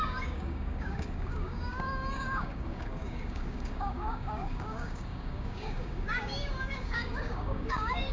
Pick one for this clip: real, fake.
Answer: fake